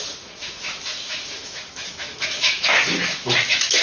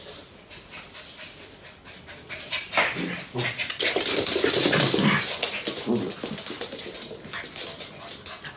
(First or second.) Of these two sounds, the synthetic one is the first